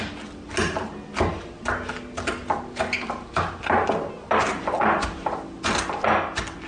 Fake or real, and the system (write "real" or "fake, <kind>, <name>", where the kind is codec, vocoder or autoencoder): real